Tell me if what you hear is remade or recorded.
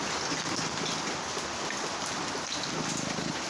recorded